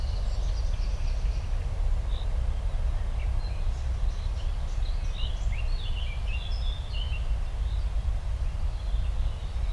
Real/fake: real